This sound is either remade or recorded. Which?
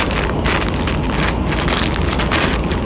recorded